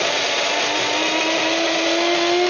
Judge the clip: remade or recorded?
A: recorded